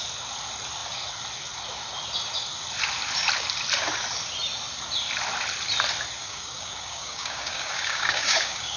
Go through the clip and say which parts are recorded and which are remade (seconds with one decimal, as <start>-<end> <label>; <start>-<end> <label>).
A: 0.0-6.2 recorded; 6.2-8.8 remade